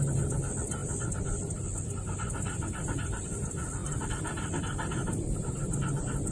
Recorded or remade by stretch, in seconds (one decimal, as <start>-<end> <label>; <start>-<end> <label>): 0.0-3.8 remade; 3.8-4.6 recorded; 4.6-6.3 remade